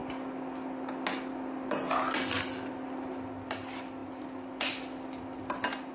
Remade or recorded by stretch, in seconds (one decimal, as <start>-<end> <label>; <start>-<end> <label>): 0.0-5.9 recorded